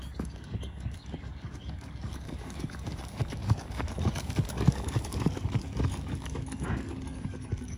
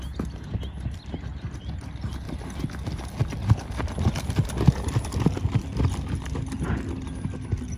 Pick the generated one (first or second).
first